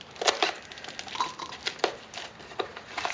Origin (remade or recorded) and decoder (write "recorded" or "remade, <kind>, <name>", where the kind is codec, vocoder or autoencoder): recorded